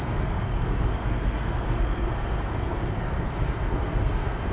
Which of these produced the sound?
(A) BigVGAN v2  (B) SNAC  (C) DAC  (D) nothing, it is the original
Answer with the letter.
B